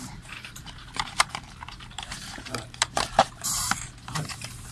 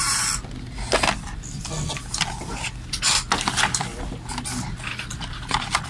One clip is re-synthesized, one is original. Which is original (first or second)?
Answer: second